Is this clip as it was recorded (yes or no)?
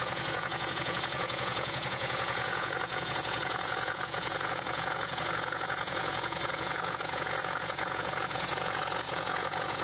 no